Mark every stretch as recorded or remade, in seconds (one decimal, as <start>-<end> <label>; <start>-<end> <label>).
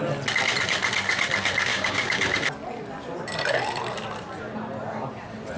0.0-1.7 recorded; 1.7-2.2 remade; 2.2-5.6 recorded